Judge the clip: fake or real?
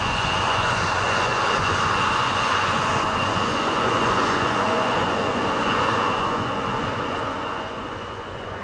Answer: fake